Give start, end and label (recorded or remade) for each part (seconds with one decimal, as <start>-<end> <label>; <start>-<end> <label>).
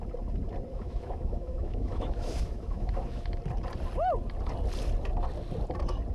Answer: 0.0-0.7 recorded; 0.7-3.4 remade; 3.4-6.1 recorded